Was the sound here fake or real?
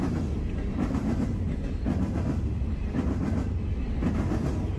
real